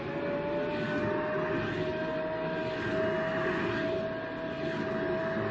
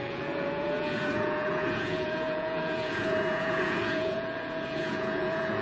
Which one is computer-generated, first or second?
second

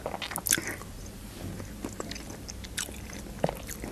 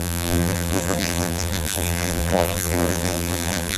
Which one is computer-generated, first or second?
second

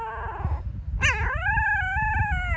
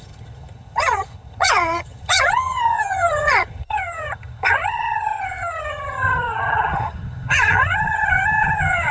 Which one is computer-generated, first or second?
second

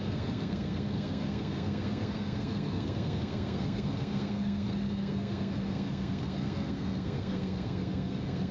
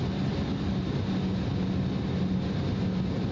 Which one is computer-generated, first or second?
first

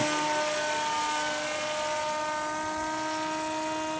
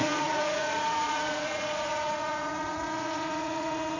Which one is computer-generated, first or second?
second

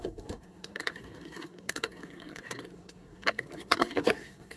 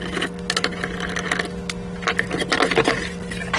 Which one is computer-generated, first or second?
first